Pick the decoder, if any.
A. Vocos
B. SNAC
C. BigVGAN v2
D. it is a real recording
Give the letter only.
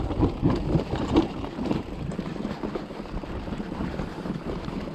C